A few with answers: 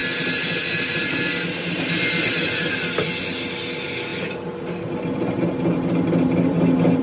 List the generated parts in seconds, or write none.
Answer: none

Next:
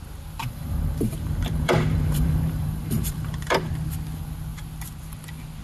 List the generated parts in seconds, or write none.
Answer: 0.4-3.7 (vocoder, BigVGAN v2)

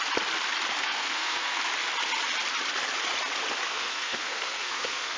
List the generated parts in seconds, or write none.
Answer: 0.8-1.6 (codec, SNAC); 3.7-5.2

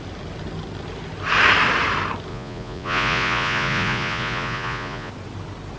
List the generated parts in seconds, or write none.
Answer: 2.3-5.1 (vocoder, Vocos)

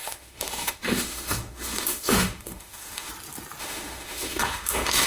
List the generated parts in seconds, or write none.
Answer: 0.0-3.1 (autoencoder, DAC-VAE); 3.6-5.1

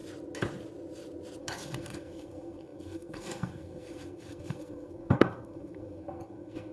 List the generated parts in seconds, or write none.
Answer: 1.4-6.7 (codec, SNAC)